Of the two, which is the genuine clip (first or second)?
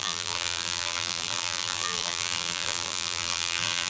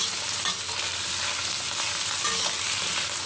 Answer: second